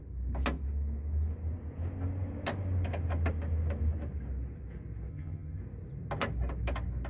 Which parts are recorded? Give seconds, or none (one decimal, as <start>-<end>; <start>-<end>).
0.0-5.1; 5.6-7.1